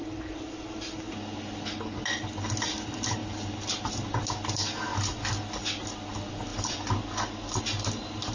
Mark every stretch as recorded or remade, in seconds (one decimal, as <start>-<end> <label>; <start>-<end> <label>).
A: 0.0-3.2 recorded; 3.2-3.9 remade; 3.9-6.5 recorded; 6.5-7.6 remade; 7.6-8.3 recorded